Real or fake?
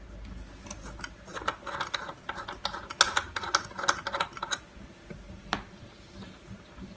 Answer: real